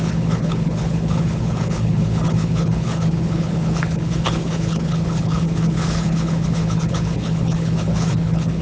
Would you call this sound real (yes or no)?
no